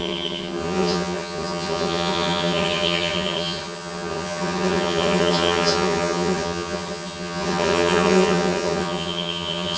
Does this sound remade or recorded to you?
remade